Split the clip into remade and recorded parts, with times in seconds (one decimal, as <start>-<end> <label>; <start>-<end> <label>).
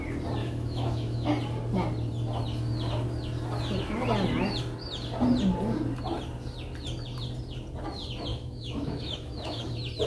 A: 0.0-0.4 recorded; 0.4-1.3 remade; 1.3-8.3 recorded; 8.3-9.6 remade; 9.6-10.1 recorded